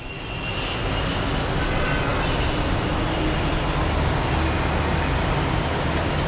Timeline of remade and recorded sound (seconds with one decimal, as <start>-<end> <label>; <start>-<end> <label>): 0.0-6.3 recorded